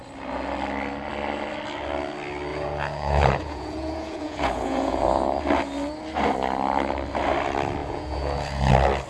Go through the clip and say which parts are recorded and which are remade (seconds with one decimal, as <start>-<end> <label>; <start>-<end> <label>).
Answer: 0.0-2.5 recorded; 2.5-5.4 remade; 5.4-7.8 recorded; 7.8-8.7 remade; 8.7-9.1 recorded